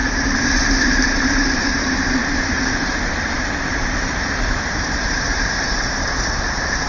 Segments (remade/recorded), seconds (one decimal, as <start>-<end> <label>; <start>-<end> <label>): 0.0-2.2 remade; 2.2-2.8 recorded; 2.8-6.9 remade